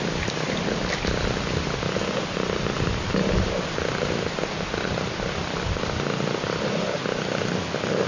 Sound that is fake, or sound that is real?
real